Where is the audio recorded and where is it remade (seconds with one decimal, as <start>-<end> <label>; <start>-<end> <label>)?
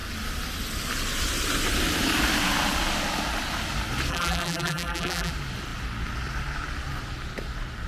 0.0-4.1 recorded; 4.1-5.3 remade; 5.3-7.9 recorded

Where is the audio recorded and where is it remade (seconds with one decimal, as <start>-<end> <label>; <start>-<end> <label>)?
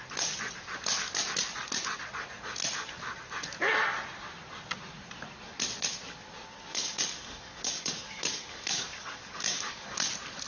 0.0-6.7 recorded; 6.7-10.1 remade; 10.1-10.5 recorded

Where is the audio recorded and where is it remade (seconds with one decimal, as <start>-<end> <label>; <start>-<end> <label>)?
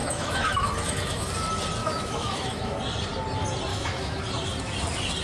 0.0-1.3 remade; 1.3-1.8 recorded; 1.8-2.8 remade; 2.8-3.7 recorded; 3.7-4.2 remade; 4.2-5.2 recorded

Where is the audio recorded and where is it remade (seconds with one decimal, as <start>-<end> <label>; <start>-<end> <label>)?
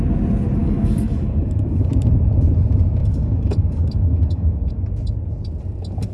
0.0-0.6 recorded; 0.6-1.9 remade; 1.9-3.0 recorded; 3.0-4.7 remade; 4.7-6.1 recorded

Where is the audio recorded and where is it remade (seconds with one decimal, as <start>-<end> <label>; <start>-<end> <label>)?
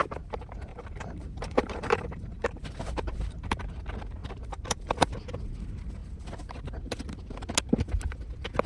0.0-0.7 recorded; 0.7-3.7 remade; 3.7-4.2 recorded; 4.2-5.4 remade; 5.4-8.7 recorded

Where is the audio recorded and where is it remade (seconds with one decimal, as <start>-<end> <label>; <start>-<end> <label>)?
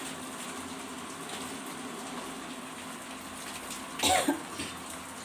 0.0-5.2 recorded